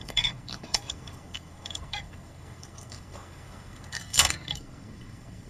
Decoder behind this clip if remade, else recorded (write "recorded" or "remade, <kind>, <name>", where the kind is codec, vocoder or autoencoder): remade, codec, SNAC